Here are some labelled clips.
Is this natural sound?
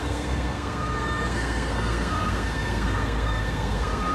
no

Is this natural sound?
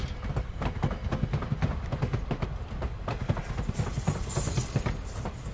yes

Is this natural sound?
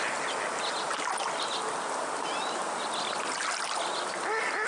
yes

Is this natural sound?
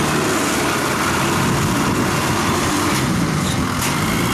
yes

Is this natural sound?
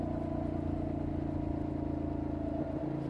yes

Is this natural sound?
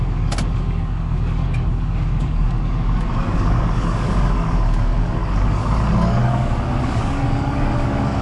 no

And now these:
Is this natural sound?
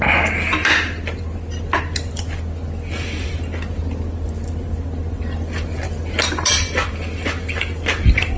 yes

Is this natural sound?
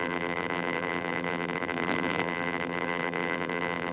no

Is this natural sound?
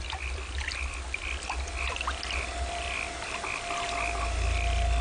yes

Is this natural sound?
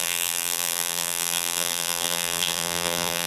no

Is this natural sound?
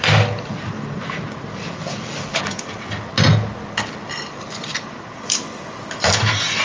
yes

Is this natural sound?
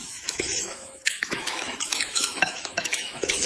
no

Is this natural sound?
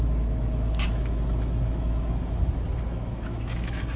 no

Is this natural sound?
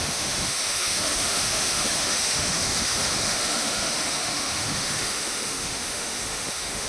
no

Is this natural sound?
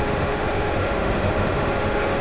no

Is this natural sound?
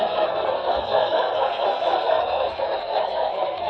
no